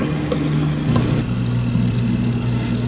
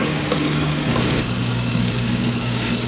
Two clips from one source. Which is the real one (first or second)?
first